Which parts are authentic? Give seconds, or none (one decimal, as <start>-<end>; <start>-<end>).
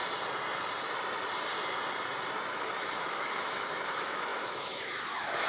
0.0-2.5